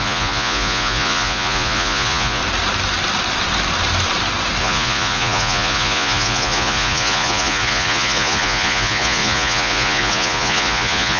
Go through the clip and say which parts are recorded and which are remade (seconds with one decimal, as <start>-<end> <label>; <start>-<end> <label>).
0.0-2.4 remade; 2.4-4.6 recorded; 4.6-11.2 remade